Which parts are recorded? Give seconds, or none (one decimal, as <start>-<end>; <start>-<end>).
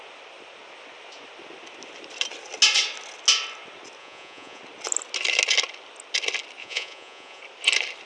0.0-4.0; 4.6-6.6; 7.4-8.1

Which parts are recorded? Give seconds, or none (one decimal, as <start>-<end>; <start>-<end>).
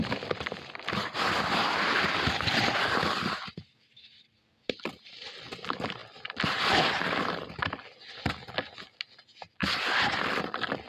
0.0-10.9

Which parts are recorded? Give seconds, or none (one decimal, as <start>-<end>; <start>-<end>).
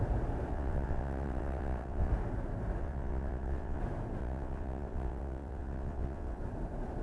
0.0-0.5; 2.1-2.8; 3.8-4.2; 6.4-7.0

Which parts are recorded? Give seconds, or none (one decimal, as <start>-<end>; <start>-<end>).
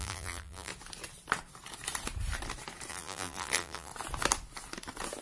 0.7-2.9; 3.9-5.2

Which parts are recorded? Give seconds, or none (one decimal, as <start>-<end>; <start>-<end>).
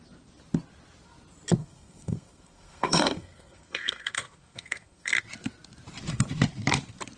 0.0-1.6; 5.2-7.2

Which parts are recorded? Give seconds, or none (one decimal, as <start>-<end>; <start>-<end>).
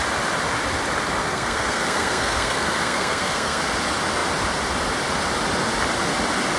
0.0-1.2; 3.6-6.6